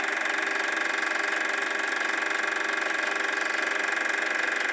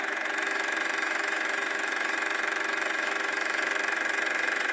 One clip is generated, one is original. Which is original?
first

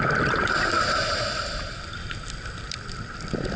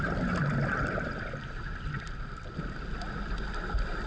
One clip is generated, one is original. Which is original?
second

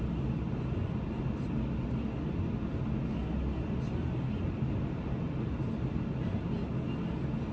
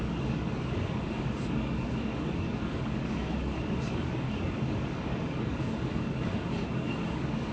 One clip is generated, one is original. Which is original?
first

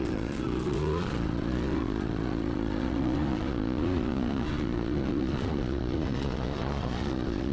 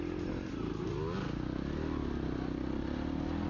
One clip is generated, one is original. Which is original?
second